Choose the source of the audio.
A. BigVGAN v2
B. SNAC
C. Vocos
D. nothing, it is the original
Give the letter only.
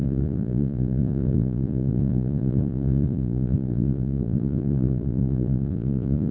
C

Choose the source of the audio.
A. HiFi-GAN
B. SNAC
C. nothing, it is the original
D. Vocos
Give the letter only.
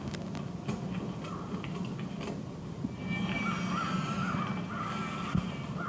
C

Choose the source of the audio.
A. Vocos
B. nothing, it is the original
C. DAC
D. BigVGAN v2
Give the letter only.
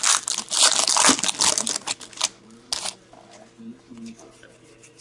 B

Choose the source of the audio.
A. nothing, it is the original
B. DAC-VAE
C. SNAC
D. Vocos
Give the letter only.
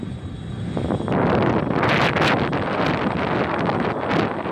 A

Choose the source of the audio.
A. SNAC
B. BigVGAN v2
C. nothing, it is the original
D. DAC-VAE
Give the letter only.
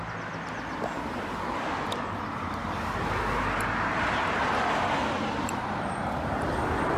C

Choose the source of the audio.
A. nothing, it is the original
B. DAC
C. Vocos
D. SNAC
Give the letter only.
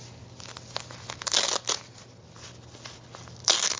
A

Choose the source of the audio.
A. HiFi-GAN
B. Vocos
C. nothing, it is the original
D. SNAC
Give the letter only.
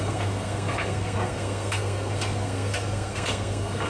D